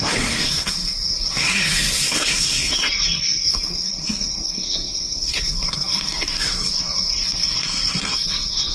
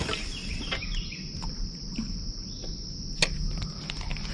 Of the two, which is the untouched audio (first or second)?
second